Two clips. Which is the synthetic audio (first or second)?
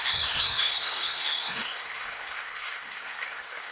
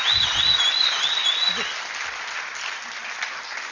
first